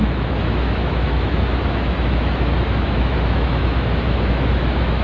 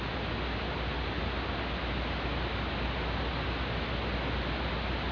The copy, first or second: first